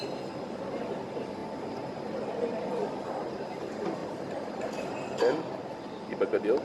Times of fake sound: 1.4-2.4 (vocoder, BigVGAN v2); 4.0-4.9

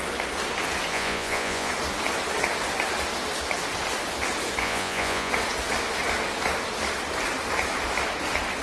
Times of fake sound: 0.9-1.7 (vocoder, Vocos); 4.6-5.3

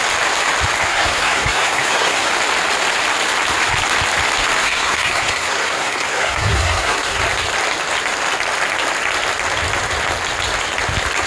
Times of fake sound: 0.9-2.3 (codec, SNAC); 4.6-7.2

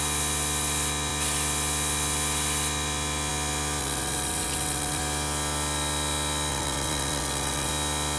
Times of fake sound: 3.8-5.0 (vocoder, WaveNeXt); 6.5-7.7

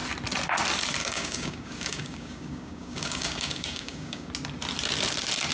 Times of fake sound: 1.0-4.3 (codec, DAC)

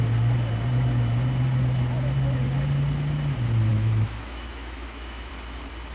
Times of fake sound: 3.7-5.3 (autoencoder, DAC-VAE)